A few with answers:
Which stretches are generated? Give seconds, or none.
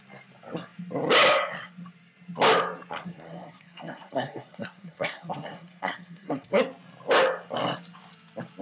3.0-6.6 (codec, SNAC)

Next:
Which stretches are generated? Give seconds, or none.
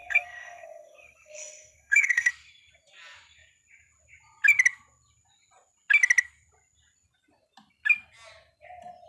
0.0-2.3 (codec, SNAC)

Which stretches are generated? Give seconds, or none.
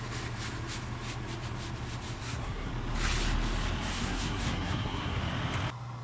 2.2-2.7 (codec, SNAC); 3.9-5.2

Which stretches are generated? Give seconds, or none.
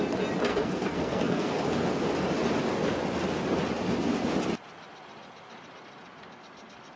0.5-1.6 (codec, SNAC)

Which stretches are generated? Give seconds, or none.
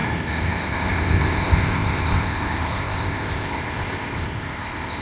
0.0-5.0 (codec, ZipCodec)